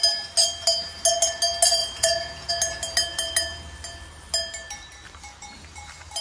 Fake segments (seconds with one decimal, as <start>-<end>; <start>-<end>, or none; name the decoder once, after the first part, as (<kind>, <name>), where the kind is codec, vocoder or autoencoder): 1.8-2.5 (vocoder, Vocos)